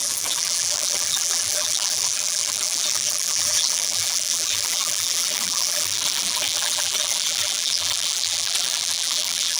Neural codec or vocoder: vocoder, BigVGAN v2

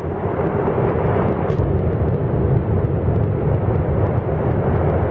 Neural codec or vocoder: none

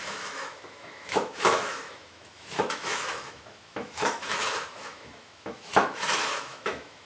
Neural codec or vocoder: autoencoder, DAC-VAE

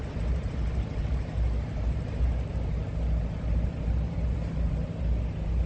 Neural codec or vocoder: vocoder, BigVGAN v2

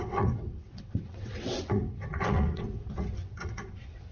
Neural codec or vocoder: vocoder, WaveNeXt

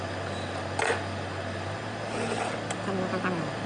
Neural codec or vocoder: none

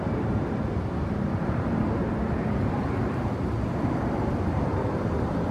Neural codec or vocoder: vocoder, BigVGAN v2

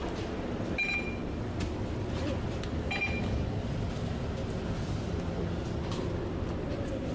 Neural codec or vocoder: none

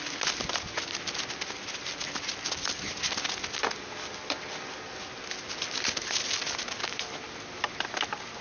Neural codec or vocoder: none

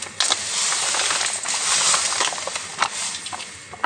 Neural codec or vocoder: none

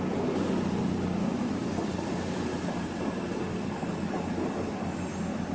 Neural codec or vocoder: none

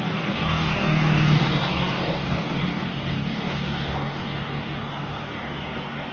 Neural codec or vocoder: codec, DAC